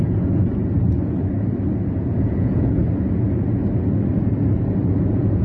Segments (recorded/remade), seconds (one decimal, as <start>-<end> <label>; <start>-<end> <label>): 0.0-0.5 remade; 0.5-2.1 recorded; 2.1-2.8 remade; 2.8-4.8 recorded; 4.8-5.4 remade